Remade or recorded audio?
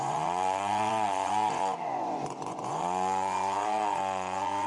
remade